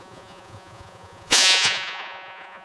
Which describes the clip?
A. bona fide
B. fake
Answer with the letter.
B